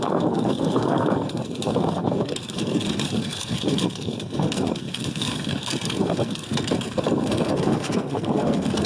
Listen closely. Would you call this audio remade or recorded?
remade